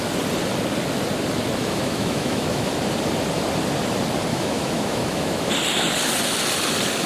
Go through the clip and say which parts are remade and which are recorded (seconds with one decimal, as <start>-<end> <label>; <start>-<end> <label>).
0.0-1.6 recorded; 1.6-2.7 remade; 2.7-4.3 recorded; 4.3-5.5 remade; 5.5-7.1 recorded